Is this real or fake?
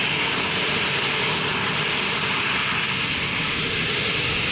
real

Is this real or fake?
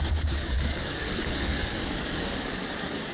fake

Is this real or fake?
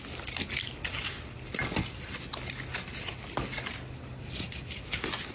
real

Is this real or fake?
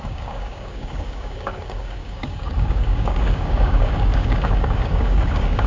fake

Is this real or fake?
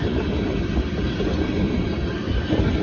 real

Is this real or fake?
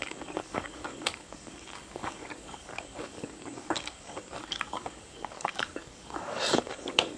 fake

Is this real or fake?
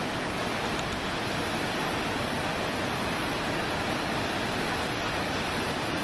real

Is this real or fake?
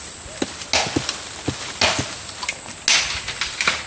real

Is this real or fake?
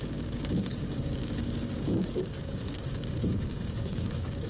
fake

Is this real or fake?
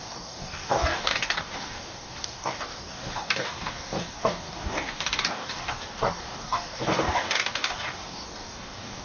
fake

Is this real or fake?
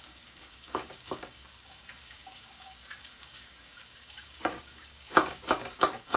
fake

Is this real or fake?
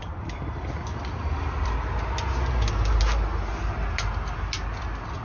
real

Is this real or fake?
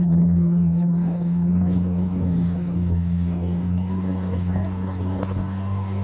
fake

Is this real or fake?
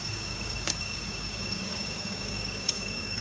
fake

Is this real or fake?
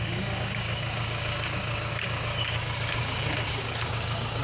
fake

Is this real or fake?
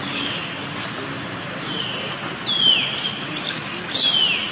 real